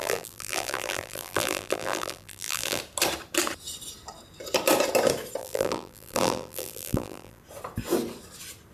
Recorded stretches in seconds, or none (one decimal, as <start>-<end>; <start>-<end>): 2.8-5.4; 7.4-8.7